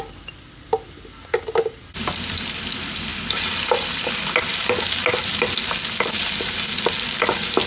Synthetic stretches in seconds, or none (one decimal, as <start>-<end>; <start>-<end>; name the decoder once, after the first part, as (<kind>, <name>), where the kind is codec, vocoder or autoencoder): none